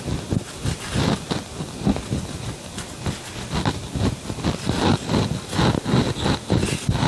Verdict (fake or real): real